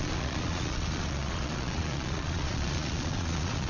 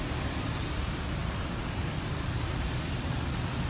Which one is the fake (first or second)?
first